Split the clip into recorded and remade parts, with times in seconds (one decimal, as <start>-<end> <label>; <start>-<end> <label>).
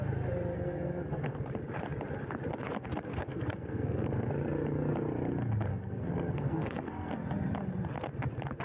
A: 0.0-0.5 recorded; 0.5-1.5 remade; 1.5-3.1 recorded; 3.1-4.3 remade; 4.3-5.7 recorded; 5.7-7.1 remade; 7.1-8.6 recorded